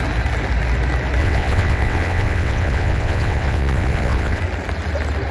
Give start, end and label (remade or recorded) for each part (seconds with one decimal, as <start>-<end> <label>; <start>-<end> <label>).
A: 0.0-1.2 recorded; 1.2-4.4 remade; 4.4-5.3 recorded